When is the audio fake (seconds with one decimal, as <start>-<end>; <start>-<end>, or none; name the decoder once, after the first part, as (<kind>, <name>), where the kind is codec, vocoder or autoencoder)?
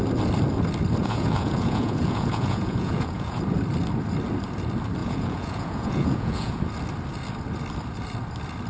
1.0-3.4 (vocoder, Vocos); 5.0-6.6